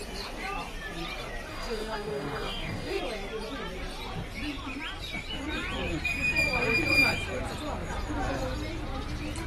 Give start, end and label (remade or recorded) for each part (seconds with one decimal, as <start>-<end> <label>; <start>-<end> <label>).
0.0-1.5 recorded; 1.5-3.0 remade; 3.0-9.5 recorded